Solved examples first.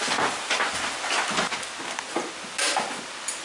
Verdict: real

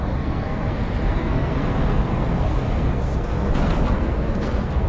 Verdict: fake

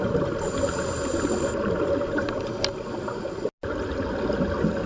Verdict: real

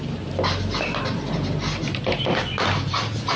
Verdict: real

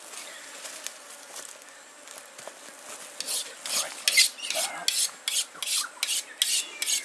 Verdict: real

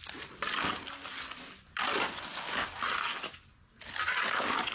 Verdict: real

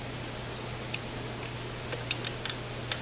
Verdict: real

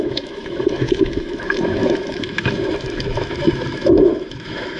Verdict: fake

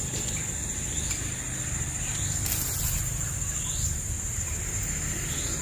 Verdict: real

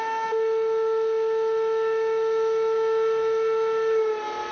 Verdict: real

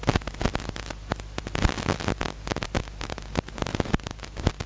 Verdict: real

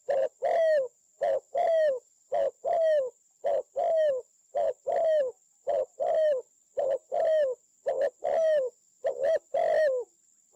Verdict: real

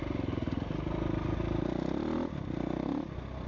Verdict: real